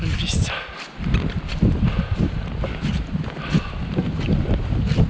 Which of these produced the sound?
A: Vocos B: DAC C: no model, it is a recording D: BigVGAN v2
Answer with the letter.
C